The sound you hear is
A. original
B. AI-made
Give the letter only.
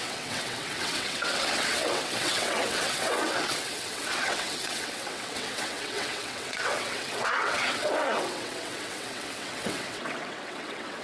B